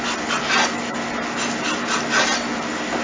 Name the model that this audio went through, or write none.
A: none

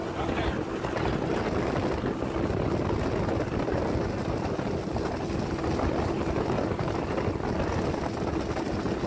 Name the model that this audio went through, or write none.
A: none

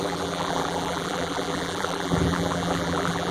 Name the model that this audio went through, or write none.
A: vocoder, BigVGAN v2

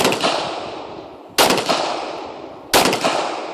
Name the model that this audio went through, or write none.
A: none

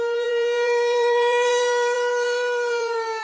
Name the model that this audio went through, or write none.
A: vocoder, BigVGAN v2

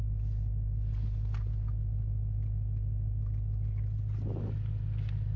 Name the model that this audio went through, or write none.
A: none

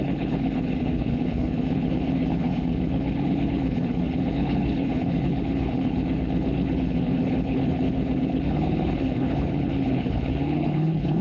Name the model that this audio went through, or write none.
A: codec, HILCodec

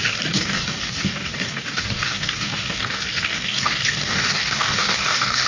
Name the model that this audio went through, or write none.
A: codec, DAC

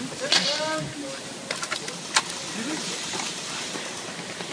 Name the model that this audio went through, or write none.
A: none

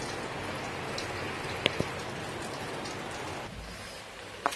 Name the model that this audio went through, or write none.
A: none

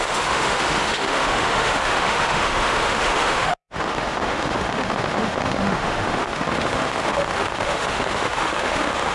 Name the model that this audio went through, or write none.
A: autoencoder, DAC-VAE